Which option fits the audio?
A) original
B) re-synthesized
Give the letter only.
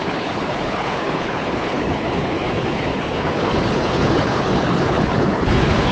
B